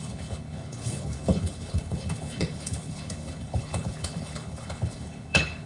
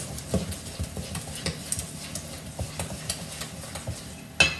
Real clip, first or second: second